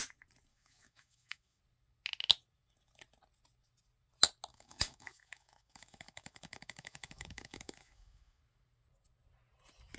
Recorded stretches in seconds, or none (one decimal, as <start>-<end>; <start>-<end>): 0.0-0.5; 1.6-4.5; 8.4-10.0

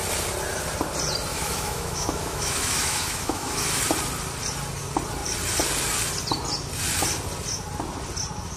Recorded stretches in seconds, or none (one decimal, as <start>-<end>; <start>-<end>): 0.0-1.3; 3.8-8.6

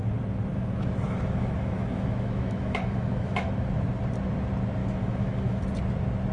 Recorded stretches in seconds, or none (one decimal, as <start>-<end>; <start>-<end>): 0.0-0.5; 3.5-4.8; 5.7-6.3

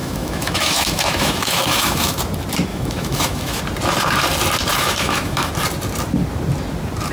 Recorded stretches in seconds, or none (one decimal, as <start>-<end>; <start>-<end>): 2.2-2.7; 3.6-4.7; 5.5-7.1